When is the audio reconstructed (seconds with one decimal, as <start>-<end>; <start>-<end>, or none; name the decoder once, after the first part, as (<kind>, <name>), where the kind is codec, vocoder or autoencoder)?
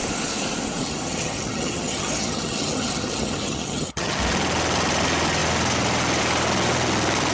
0.8-4.2 (vocoder, HiFi-GAN)